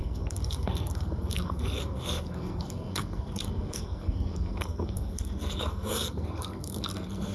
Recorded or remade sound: remade